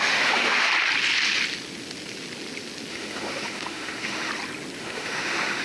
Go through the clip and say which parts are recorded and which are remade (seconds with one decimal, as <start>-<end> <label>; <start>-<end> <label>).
0.0-0.7 remade; 0.7-2.9 recorded; 2.9-4.3 remade; 4.3-4.8 recorded; 4.8-5.6 remade